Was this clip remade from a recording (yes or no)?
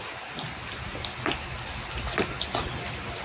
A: no